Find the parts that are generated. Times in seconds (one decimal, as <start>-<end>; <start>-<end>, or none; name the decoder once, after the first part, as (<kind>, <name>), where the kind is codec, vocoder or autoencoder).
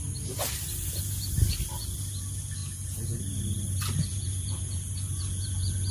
2.6-3.2 (vocoder, Vocos); 4.1-5.9